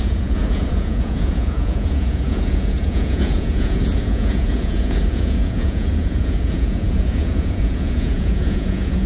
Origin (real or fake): fake